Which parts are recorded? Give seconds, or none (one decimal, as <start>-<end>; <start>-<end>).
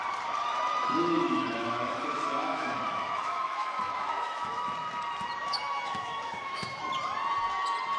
0.0-1.0; 4.7-5.4; 6.8-8.0